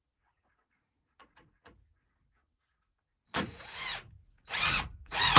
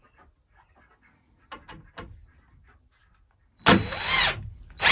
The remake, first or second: first